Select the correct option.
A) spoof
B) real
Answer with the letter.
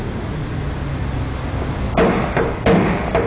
B